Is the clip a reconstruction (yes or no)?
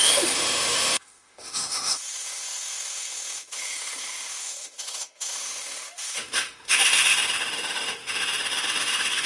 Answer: yes